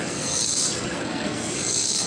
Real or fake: fake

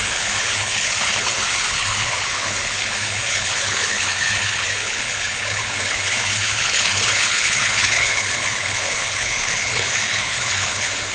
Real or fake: fake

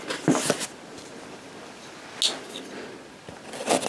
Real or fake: real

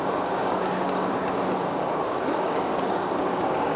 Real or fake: fake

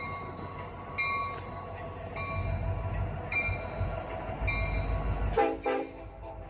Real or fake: real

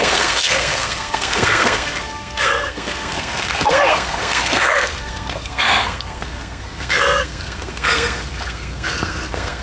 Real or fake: fake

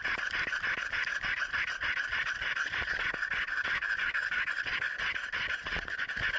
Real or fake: real